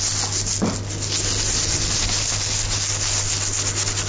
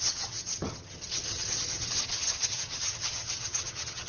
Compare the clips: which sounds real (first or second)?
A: first